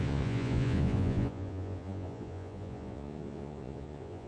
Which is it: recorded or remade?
remade